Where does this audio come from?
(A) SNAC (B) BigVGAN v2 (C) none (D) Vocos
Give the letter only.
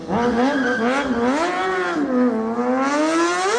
C